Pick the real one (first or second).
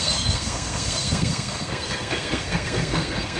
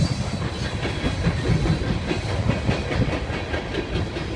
second